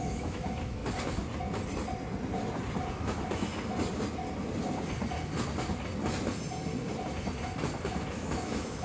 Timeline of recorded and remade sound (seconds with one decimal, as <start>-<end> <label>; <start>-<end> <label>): 0.0-0.8 remade; 0.8-2.9 recorded; 2.9-3.5 remade; 3.5-8.1 recorded; 8.1-8.8 remade